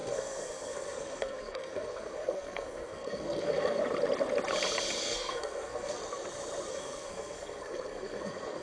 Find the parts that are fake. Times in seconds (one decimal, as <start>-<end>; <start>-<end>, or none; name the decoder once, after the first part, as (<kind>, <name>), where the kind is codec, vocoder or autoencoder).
0.0-3.8 (codec, SNAC); 5.0-6.0; 6.7-8.6